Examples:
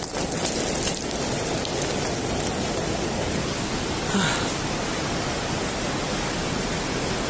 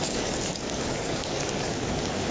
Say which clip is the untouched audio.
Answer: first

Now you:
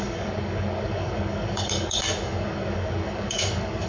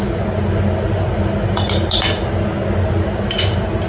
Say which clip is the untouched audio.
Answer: second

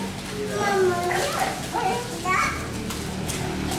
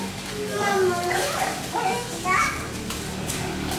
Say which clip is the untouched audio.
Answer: first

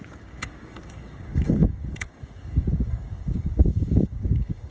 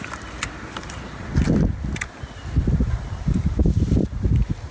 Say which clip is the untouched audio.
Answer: second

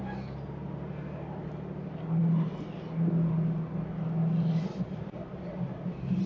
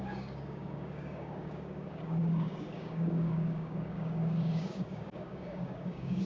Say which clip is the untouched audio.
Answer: first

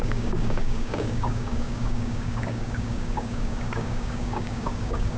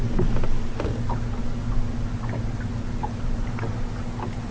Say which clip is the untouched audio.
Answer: second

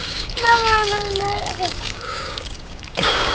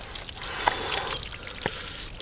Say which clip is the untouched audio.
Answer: second